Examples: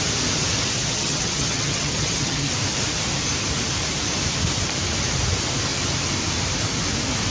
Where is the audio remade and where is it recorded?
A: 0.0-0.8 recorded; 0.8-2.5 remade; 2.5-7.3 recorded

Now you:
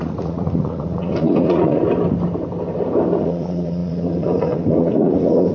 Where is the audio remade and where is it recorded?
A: 0.0-1.8 remade; 1.8-3.2 recorded; 3.2-5.5 remade